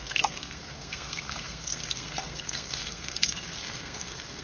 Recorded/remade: remade